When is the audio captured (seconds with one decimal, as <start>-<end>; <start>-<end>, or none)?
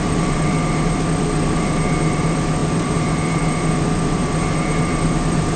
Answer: none